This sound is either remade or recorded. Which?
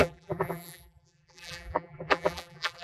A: remade